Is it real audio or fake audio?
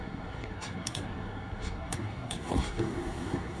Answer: fake